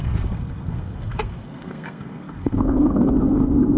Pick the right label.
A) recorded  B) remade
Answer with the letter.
B